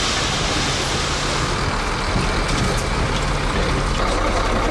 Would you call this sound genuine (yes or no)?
yes